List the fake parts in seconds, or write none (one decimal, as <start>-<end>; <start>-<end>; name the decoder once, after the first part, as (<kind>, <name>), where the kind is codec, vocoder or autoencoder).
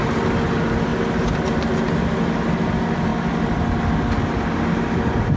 none